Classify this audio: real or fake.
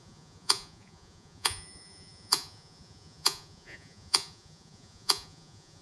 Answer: fake